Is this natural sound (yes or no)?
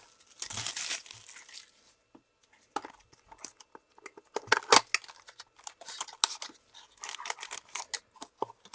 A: yes